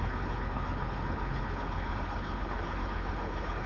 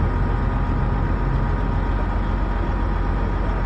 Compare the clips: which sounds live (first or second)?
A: second